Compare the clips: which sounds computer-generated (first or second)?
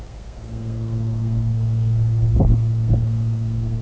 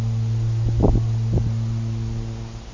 first